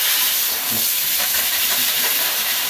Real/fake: fake